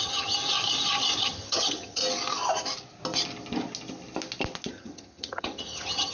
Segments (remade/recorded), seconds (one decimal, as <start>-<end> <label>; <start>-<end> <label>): 0.0-0.4 remade; 0.4-1.2 recorded; 1.2-2.0 remade; 2.0-4.7 recorded; 4.7-6.1 remade